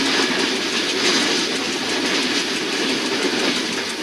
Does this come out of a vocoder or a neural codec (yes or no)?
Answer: no